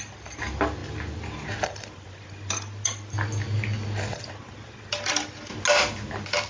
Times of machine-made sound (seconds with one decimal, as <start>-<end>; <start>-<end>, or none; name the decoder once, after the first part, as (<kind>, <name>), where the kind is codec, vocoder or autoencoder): none